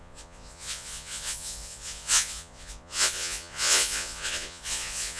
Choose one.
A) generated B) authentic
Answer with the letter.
A